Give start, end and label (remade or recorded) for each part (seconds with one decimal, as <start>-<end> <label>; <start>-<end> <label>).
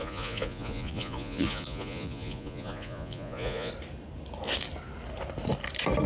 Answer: 0.0-3.7 remade; 3.7-6.1 recorded